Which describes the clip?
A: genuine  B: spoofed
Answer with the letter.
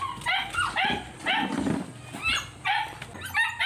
A